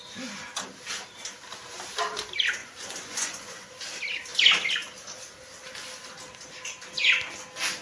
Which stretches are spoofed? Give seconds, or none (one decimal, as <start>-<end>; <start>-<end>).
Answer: 2.6-3.7